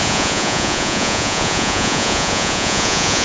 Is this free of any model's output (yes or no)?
no